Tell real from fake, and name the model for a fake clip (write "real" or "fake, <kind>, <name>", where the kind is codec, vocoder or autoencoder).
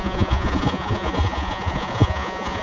fake, vocoder, Vocos